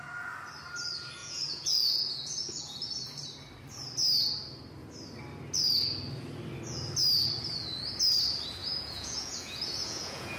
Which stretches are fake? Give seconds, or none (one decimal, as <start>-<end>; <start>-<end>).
1.2-2.9; 8.6-10.4